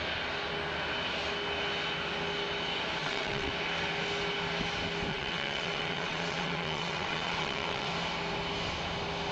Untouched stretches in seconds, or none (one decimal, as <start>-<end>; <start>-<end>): 0.0-3.0; 3.5-5.1; 7.9-9.3